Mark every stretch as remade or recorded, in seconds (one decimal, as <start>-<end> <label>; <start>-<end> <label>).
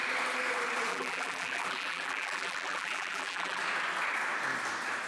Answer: 0.0-0.9 recorded; 0.9-3.6 remade; 3.6-5.1 recorded